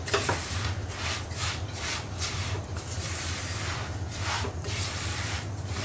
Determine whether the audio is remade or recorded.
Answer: remade